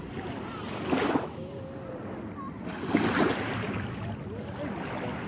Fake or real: real